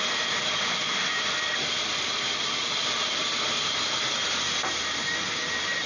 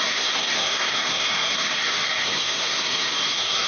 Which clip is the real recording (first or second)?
first